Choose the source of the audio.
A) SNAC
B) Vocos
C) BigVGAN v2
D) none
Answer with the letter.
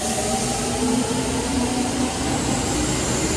D